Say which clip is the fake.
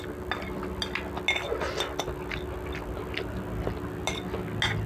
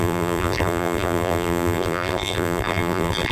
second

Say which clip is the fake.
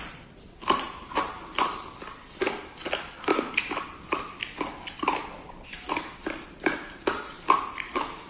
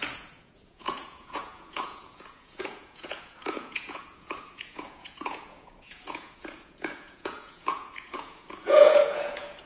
second